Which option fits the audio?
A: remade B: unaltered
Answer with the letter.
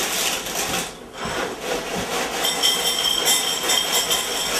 B